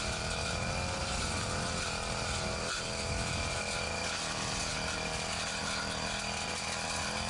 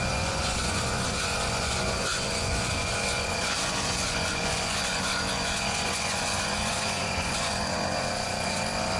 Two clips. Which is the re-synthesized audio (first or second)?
second